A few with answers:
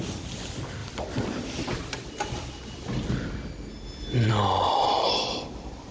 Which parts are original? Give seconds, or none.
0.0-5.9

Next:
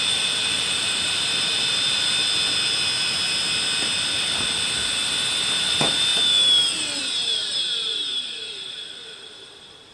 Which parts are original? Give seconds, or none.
2.2-5.4; 6.1-7.0

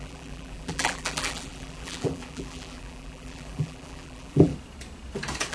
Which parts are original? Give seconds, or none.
4.5-5.5

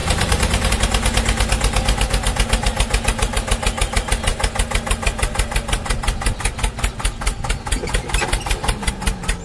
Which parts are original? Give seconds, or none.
0.7-7.8; 8.9-9.4